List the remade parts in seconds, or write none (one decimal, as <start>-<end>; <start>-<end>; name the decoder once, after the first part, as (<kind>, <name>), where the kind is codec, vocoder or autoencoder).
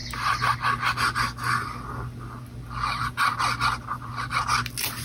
none